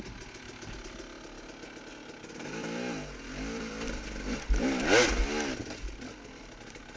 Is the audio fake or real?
real